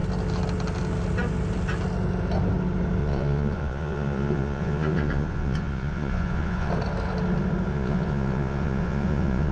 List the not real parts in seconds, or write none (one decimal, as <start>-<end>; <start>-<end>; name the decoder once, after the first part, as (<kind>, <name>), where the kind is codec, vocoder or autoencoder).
3.0-6.7 (vocoder, Vocos); 7.7-9.5